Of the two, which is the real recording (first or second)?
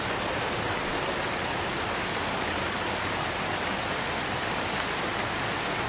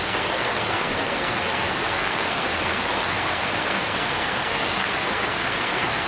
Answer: first